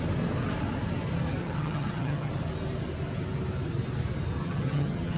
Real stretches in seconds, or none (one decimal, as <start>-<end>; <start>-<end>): 0.0-1.4; 2.3-4.4